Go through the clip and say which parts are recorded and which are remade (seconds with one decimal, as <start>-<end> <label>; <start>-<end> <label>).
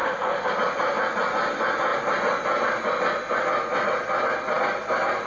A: 0.0-0.5 remade; 0.5-5.3 recorded